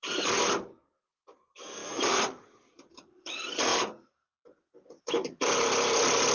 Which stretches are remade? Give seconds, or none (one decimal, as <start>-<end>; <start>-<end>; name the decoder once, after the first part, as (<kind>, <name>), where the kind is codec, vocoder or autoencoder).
0.0-3.7 (vocoder, BigVGAN v2); 5.0-6.3